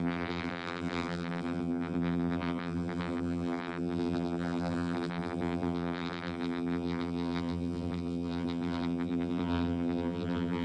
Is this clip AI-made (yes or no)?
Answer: yes